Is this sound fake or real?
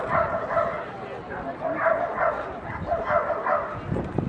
real